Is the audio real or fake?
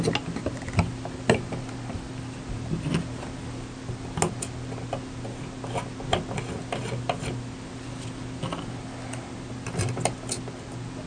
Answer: real